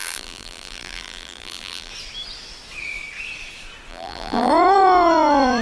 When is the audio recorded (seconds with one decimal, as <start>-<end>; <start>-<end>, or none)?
1.9-3.9; 4.5-5.6